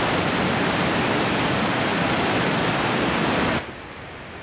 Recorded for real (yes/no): yes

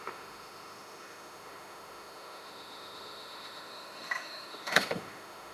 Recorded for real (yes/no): no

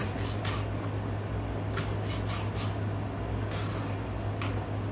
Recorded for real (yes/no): yes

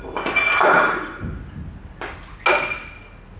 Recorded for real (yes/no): yes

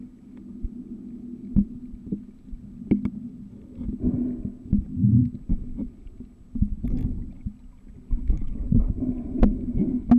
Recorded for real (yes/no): yes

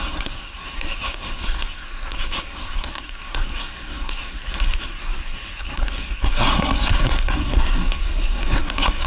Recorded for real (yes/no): no